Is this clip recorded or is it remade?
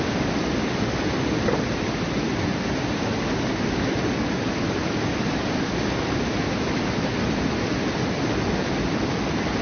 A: recorded